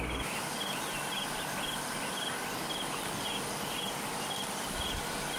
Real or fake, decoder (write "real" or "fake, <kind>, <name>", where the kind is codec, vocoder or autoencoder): real